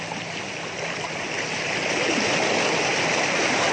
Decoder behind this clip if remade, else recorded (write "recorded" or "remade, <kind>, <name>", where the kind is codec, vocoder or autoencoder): recorded